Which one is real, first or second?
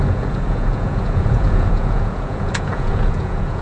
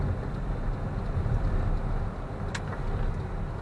second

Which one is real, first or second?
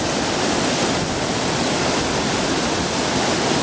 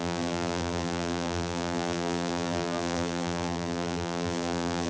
first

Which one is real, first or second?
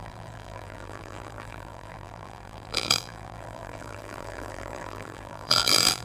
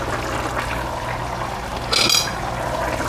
second